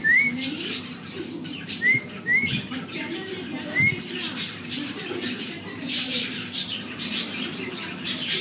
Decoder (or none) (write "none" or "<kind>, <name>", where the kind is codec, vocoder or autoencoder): vocoder, BigVGAN v2